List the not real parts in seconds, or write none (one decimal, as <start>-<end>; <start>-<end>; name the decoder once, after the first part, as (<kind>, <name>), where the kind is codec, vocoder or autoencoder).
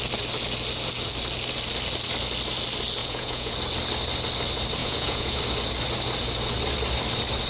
3.0-3.5 (vocoder, Vocos); 4.8-5.4